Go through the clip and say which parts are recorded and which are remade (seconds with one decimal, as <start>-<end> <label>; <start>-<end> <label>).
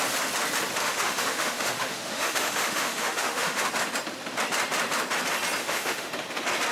0.0-0.8 recorded; 0.8-3.7 remade; 3.7-5.6 recorded; 5.6-6.1 remade; 6.1-6.7 recorded